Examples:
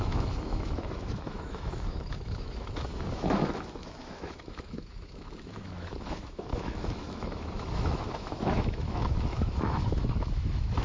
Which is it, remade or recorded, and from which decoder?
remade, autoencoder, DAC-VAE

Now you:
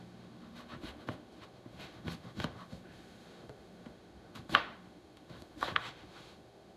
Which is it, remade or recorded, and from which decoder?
remade, autoencoder, DAC-VAE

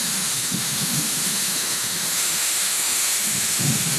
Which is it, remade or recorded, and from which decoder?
remade, autoencoder, DAC-VAE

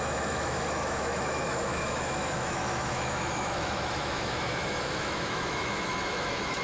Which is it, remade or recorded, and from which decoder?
remade, autoencoder, DAC-VAE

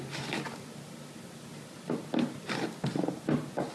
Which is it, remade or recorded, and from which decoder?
recorded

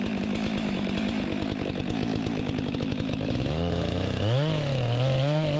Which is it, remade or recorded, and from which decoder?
remade, autoencoder, DAC-VAE